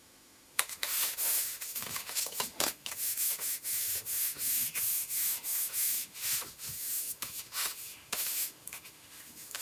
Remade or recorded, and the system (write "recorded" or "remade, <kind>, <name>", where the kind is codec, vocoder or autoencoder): remade, autoencoder, DAC-VAE